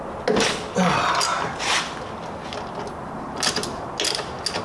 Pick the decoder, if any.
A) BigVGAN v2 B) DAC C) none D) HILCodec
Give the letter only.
C